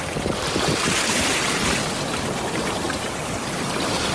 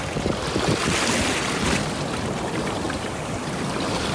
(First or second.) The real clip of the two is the second